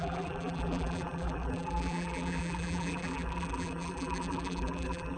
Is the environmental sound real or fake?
fake